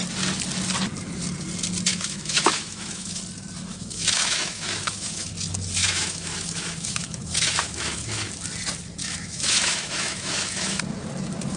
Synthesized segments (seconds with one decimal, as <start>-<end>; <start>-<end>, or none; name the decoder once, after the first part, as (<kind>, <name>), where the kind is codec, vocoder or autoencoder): 1.9-3.2 (autoencoder, DAC-VAE); 3.7-5.3; 5.8-8.3; 9.0-10.8